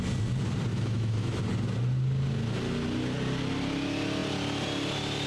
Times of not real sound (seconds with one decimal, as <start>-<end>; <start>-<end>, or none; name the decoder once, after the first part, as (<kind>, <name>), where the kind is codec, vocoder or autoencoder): 0.7-1.4 (autoencoder, DAC-VAE)